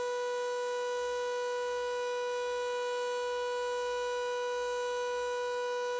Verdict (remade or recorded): recorded